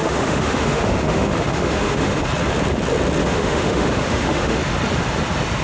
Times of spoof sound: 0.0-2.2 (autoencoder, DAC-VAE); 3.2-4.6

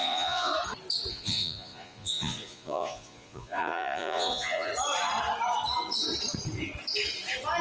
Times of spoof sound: 0.0-0.5 (vocoder, Vocos); 1.1-4.7

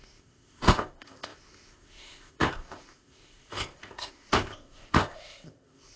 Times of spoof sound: 0.0-6.0 (codec, ZipCodec)

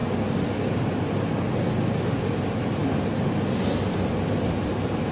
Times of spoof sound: none